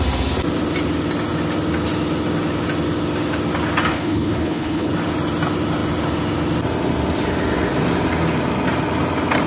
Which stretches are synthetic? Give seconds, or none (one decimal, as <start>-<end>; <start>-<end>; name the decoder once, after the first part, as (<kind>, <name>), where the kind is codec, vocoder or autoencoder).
3.9-4.9 (codec, HILCodec)